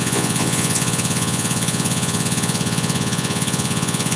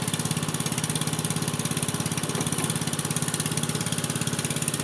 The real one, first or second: second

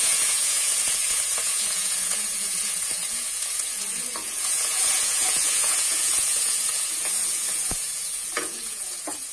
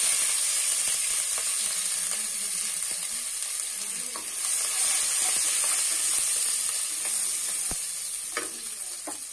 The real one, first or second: second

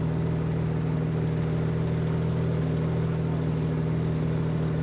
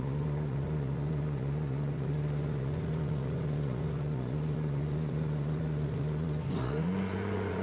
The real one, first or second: first